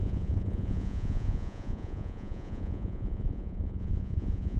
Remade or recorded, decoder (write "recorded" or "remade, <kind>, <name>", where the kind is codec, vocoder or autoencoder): remade, vocoder, Vocos